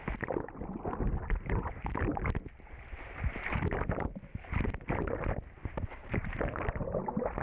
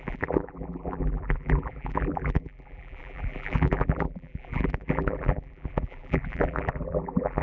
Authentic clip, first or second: first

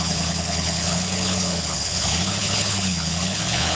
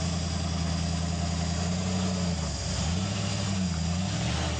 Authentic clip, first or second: second